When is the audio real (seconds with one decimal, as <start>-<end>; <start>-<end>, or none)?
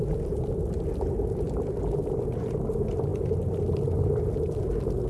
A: 0.0-5.1